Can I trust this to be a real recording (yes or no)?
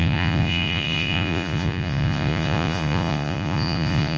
no